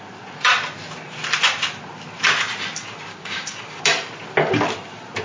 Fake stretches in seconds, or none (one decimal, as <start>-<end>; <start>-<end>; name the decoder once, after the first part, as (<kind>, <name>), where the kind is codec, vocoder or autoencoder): 3.1-3.8 (codec, DAC)